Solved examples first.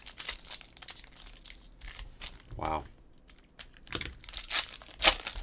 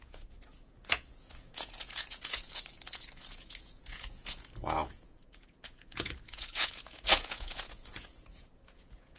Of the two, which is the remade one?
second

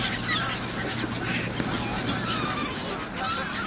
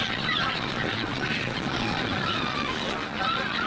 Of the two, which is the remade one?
second